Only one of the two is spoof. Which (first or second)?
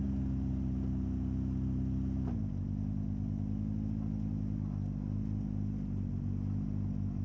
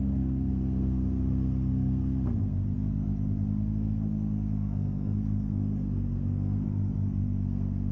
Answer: second